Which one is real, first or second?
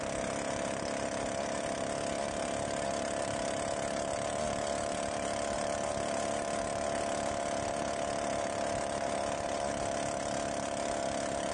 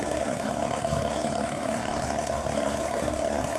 first